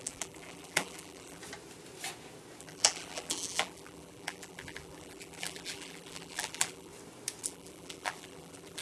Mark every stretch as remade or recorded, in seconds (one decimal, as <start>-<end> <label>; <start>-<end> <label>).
0.0-1.4 remade; 1.4-2.6 recorded; 2.6-6.9 remade; 6.9-7.4 recorded; 7.4-8.8 remade